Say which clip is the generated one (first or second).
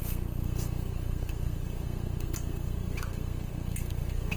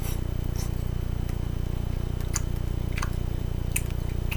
first